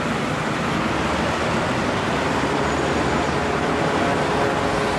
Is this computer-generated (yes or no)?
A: no